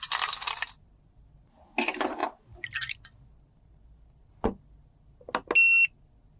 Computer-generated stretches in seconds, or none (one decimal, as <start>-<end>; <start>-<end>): none